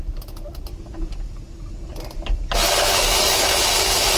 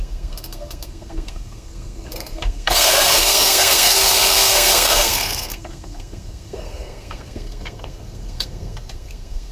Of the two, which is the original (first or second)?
first